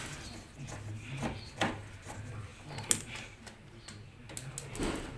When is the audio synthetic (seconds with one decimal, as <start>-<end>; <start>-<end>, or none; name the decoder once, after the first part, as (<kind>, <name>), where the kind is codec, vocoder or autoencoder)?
none